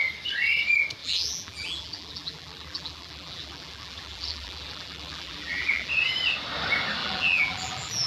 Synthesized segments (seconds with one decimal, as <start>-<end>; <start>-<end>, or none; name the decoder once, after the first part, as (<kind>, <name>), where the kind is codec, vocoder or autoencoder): 1.0-5.9 (vocoder, BigVGAN v2); 7.0-8.1